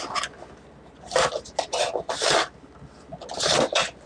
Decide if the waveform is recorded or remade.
recorded